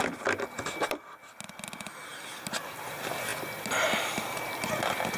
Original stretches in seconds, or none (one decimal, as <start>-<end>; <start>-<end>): 0.0-5.2